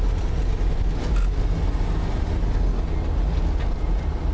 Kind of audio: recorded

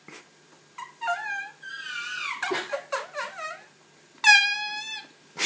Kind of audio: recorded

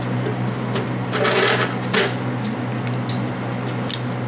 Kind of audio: recorded